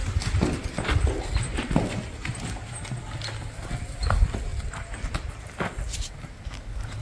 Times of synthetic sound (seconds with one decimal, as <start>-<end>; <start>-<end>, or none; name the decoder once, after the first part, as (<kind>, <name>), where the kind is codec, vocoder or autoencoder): none